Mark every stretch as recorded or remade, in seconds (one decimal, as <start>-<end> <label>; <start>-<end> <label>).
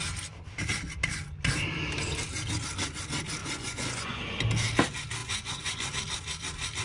0.0-3.4 recorded; 3.4-4.2 remade; 4.2-5.2 recorded; 5.2-5.9 remade; 5.9-6.8 recorded